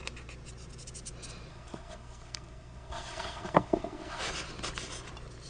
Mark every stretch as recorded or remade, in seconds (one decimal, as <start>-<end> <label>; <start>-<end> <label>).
0.0-1.5 recorded; 1.5-4.2 remade; 4.2-5.5 recorded